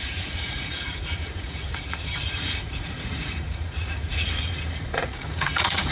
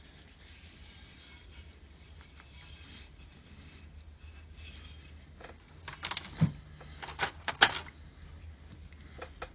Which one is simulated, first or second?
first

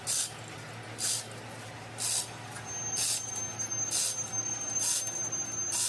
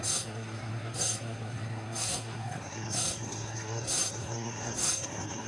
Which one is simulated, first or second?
second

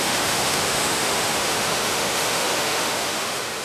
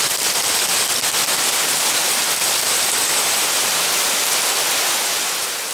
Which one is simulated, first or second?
first